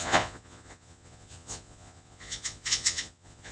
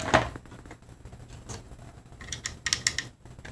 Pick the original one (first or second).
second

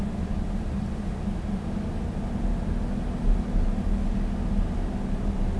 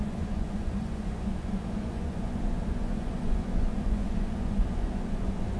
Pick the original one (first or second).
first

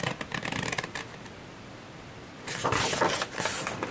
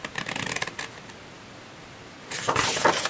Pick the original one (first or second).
second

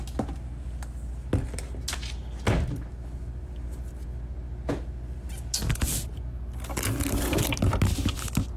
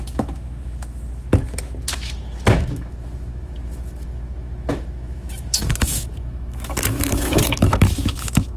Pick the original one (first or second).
first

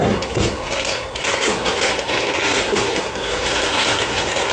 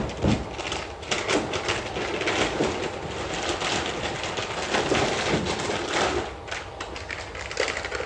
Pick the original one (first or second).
second